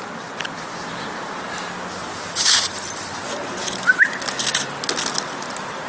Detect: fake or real real